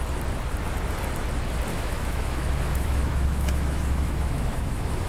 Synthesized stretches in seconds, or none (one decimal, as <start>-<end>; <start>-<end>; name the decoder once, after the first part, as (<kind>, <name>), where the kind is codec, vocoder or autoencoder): 1.7-5.1 (autoencoder, DAC-VAE)